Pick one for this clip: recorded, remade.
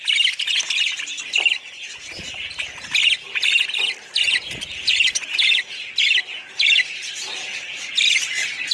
recorded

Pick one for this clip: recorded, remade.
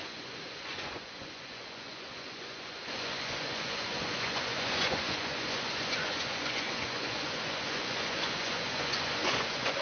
remade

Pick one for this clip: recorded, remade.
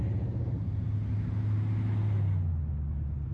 recorded